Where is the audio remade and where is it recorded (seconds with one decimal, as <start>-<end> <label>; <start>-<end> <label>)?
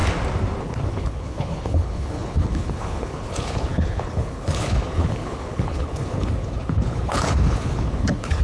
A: 0.0-0.6 recorded; 0.6-8.4 remade